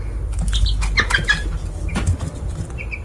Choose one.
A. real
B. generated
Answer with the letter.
A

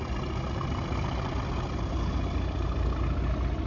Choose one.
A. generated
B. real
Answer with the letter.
B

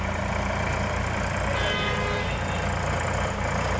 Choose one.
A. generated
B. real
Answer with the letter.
B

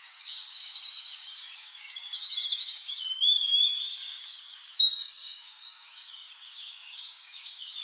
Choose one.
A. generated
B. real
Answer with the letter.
A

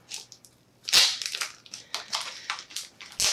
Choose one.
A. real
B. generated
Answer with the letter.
A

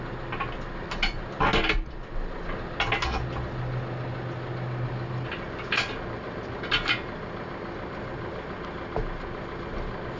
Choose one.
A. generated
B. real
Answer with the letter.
B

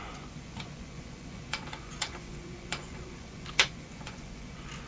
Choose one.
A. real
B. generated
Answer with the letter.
B